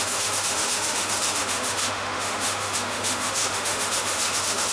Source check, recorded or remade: remade